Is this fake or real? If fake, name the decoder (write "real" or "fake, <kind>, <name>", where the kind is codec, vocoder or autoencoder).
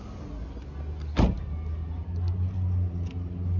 real